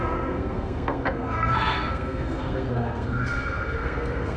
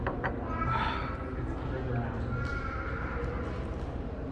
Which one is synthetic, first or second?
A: first